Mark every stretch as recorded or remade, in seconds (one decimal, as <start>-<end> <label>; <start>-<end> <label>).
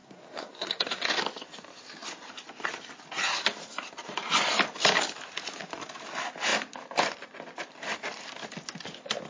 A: 0.0-1.1 remade; 1.1-9.3 recorded